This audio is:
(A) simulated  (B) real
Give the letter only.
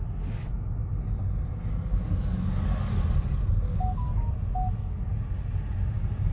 B